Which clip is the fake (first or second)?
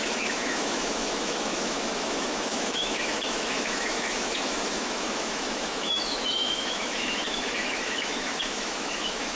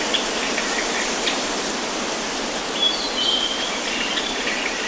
first